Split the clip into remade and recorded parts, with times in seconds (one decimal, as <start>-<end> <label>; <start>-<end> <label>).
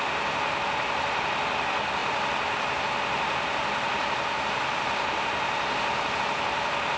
0.0-7.0 recorded